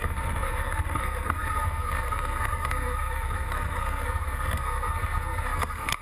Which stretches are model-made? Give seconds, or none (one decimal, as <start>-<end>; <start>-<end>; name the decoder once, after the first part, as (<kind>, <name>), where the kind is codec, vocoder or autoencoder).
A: 0.0-6.0 (codec, SNAC)